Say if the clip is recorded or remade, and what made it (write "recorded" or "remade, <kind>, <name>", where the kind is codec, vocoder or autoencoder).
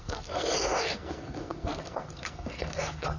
remade, codec, SNAC